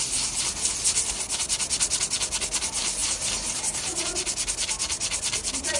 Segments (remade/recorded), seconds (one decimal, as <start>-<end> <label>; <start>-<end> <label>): 0.0-3.0 recorded; 3.0-4.1 remade; 4.1-5.8 recorded